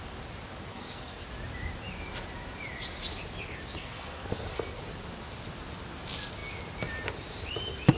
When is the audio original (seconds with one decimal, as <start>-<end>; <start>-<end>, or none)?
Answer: 0.0-0.7; 1.3-3.8; 4.8-8.0